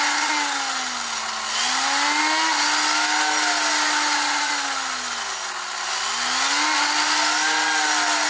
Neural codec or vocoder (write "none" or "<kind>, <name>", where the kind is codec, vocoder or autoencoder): none